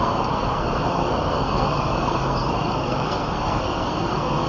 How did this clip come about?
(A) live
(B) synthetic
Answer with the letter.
B